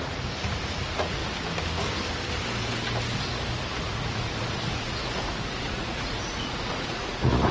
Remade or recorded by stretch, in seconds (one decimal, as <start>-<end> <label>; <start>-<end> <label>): 0.0-1.2 remade; 1.2-3.8 recorded; 3.8-7.5 remade